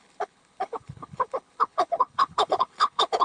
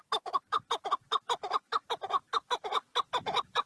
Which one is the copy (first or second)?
first